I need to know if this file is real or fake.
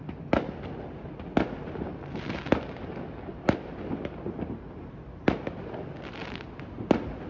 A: real